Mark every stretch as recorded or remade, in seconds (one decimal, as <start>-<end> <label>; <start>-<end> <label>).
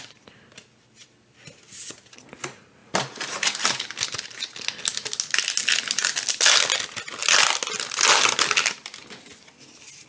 0.0-2.8 recorded; 2.8-3.8 remade; 3.8-10.1 recorded